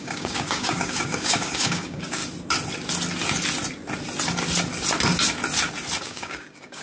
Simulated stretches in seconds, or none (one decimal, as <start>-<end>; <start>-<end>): 0.0-2.2; 6.0-6.8